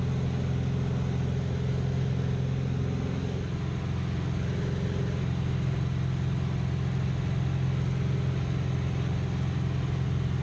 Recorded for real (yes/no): yes